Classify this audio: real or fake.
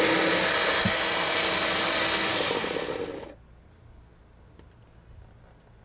real